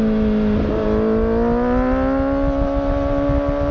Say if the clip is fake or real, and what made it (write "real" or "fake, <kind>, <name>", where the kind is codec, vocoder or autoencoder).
real